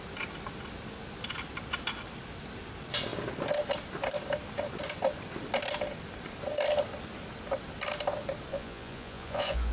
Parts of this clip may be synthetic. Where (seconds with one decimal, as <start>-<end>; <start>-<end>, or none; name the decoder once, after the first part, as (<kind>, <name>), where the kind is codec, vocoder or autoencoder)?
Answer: 8.5-9.7 (vocoder, Vocos)